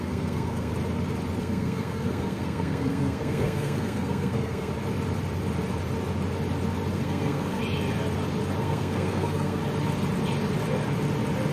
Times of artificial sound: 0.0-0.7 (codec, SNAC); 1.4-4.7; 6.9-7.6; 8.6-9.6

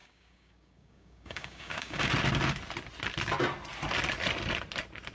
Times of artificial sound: 0.0-2.1 (codec, DAC)

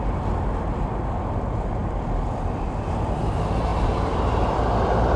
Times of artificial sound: 1.8-3.2 (vocoder, BigVGAN v2); 3.7-5.2

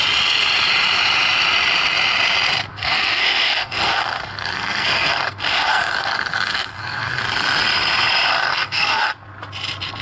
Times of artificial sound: 2.7-7.2 (codec, SNAC); 8.5-9.0